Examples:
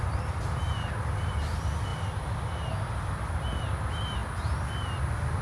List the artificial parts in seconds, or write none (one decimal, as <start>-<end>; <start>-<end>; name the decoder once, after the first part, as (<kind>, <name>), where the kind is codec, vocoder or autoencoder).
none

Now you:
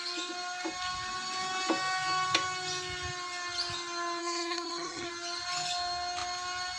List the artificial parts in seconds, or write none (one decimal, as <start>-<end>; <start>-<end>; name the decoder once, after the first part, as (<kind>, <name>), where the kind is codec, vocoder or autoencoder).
4.2-5.1 (codec, SNAC)

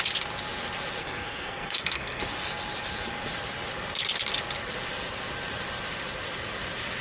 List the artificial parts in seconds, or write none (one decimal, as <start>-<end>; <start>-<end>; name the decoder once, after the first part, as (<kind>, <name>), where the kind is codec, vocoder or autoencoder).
1.0-2.2 (codec, SNAC)

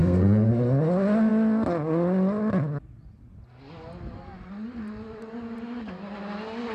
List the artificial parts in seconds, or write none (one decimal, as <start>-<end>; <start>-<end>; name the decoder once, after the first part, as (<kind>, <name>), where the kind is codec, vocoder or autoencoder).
0.0-0.5 (codec, SNAC)

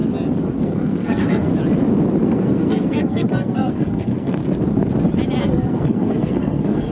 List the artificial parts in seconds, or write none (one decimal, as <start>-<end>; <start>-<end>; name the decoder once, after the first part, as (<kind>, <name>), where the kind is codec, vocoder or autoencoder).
0.6-1.5 (codec, SNAC); 2.2-4.4; 5.4-6.9

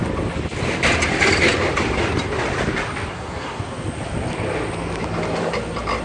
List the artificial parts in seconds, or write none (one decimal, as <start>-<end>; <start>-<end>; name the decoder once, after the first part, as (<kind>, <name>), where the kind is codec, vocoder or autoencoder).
3.1-3.6 (codec, SNAC)

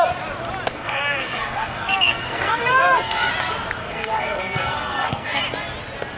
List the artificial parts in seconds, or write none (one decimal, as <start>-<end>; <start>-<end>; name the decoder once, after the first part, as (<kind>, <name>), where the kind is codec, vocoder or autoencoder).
0.7-3.3 (codec, SNAC); 3.8-5.4